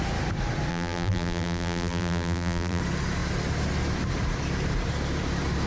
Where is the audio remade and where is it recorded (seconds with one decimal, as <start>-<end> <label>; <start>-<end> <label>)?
0.0-0.7 recorded; 0.7-2.8 remade; 2.8-5.7 recorded